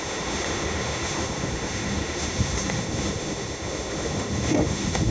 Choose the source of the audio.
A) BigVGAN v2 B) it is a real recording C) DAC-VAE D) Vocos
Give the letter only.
C